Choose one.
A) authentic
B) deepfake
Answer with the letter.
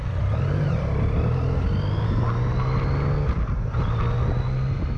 A